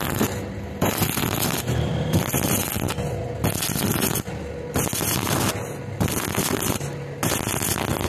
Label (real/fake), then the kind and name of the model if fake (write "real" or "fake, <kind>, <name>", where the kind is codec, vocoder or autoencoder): real